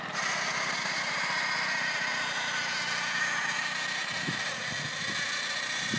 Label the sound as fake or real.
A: real